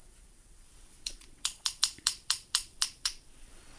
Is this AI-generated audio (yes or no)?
yes